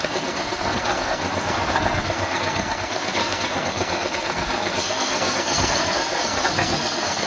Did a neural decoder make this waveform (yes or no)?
yes